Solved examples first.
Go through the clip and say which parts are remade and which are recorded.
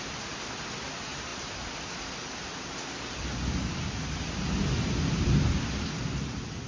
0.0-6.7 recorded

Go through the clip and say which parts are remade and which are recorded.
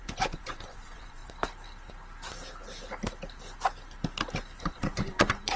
0.0-1.2 remade; 1.2-4.6 recorded; 4.6-5.6 remade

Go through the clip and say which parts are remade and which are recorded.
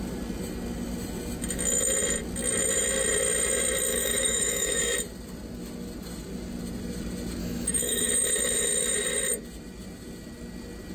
0.0-3.9 recorded; 3.9-4.8 remade; 4.8-7.4 recorded; 7.4-8.1 remade; 8.1-10.9 recorded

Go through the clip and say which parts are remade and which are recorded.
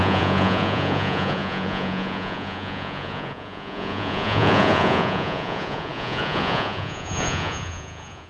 0.0-8.3 remade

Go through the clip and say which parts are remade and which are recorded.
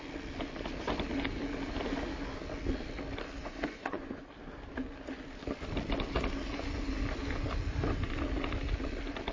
0.0-3.4 recorded; 3.4-4.2 remade; 4.2-9.3 recorded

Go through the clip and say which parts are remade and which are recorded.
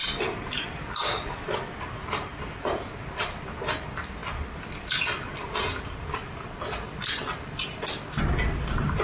0.0-9.0 recorded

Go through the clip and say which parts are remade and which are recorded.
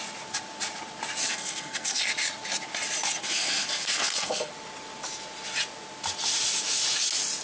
0.0-1.2 recorded; 1.2-2.0 remade; 2.0-3.2 recorded; 3.2-4.5 remade; 4.5-7.4 recorded